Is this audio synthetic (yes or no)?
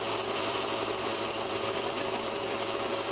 yes